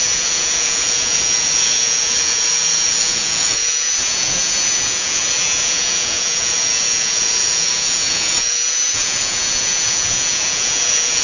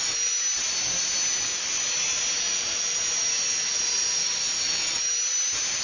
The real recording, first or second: second